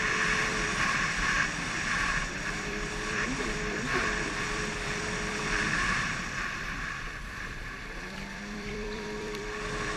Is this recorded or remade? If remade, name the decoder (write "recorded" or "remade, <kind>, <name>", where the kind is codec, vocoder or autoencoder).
remade, vocoder, BigVGAN v2